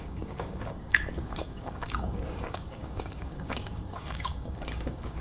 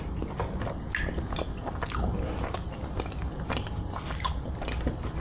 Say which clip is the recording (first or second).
second